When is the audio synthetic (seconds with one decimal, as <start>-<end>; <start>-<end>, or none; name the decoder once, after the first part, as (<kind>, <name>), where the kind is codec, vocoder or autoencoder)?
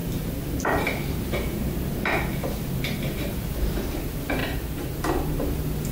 4.4-5.0 (vocoder, BigVGAN v2)